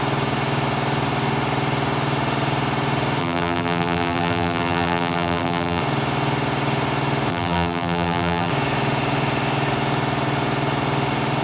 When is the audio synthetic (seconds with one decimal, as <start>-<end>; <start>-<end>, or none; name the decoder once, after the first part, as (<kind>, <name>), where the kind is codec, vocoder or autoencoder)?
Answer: 3.2-5.8 (vocoder, BigVGAN v2); 7.3-8.5